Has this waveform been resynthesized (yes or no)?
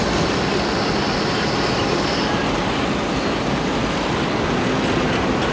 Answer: no